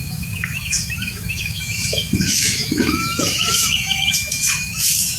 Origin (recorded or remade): remade